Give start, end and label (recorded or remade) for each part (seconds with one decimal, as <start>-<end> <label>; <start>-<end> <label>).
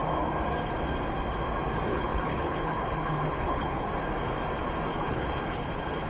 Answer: 0.0-1.9 recorded; 1.9-3.9 remade; 3.9-4.9 recorded; 4.9-6.1 remade